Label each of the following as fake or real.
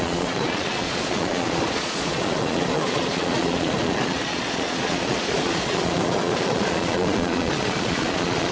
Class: fake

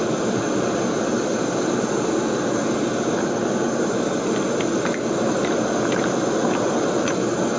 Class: real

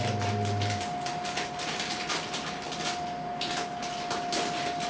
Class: real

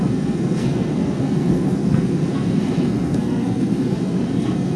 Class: fake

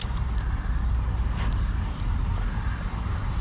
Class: real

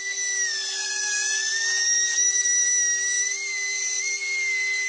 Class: real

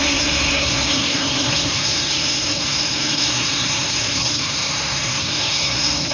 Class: fake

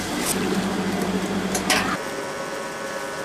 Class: real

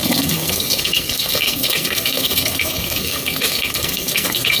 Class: fake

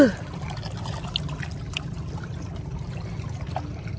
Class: real